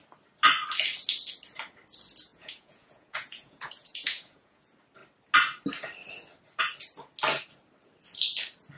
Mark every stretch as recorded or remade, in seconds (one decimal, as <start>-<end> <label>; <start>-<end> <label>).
0.0-2.3 recorded; 2.3-4.6 remade; 4.6-8.8 recorded